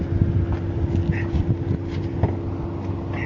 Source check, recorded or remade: recorded